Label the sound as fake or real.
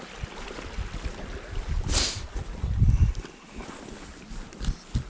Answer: real